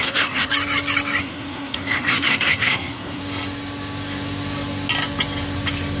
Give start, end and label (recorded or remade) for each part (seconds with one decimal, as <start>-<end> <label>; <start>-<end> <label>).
0.0-0.5 remade; 0.5-1.2 recorded; 1.2-3.2 remade; 3.2-6.0 recorded